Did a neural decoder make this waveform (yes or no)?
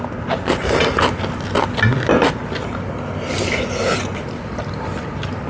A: no